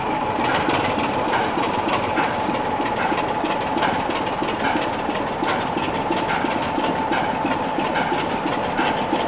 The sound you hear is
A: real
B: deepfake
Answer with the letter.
B